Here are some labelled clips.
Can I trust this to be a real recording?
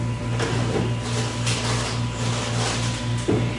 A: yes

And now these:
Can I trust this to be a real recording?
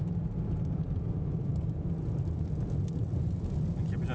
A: yes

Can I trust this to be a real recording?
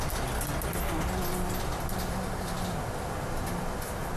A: yes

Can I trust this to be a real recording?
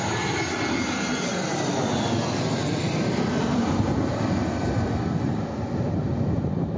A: yes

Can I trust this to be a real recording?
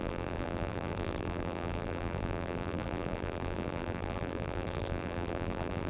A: no